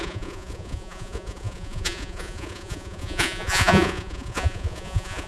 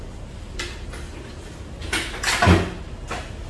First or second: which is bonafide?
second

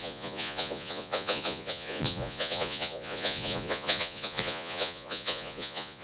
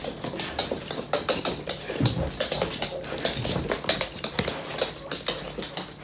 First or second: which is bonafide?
second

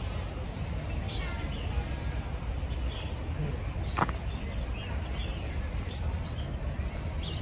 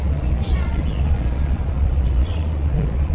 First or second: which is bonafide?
first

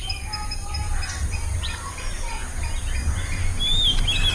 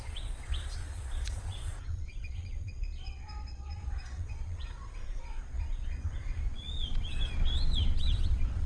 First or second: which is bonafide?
first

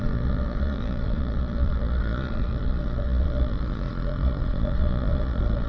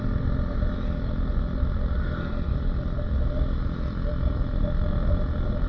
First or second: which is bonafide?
second